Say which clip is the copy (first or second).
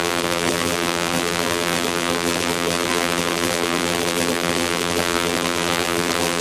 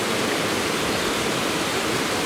first